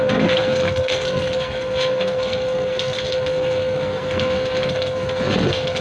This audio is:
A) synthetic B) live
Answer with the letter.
A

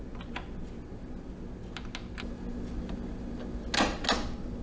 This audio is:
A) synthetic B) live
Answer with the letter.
B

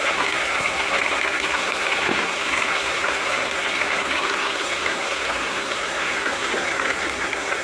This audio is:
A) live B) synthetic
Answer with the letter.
B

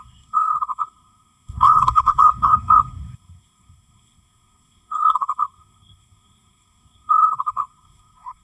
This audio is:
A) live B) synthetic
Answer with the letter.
B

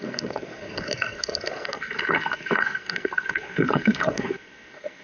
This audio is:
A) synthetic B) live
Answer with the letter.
A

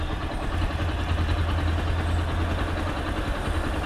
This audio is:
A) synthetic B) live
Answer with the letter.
B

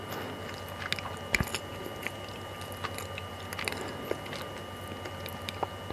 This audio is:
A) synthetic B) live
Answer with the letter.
B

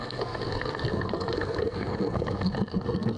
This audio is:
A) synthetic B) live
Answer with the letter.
A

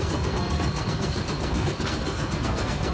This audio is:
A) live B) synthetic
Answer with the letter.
B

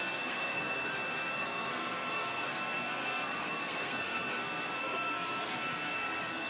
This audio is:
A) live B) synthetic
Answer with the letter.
B